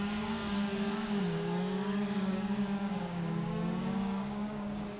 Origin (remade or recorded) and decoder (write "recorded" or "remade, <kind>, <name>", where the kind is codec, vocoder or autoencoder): remade, codec, DAC